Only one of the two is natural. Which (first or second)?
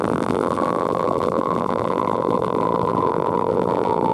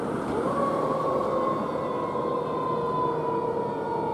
second